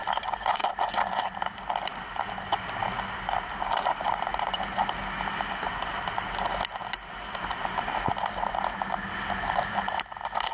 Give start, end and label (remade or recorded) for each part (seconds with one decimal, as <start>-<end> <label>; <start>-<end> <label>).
0.0-10.5 recorded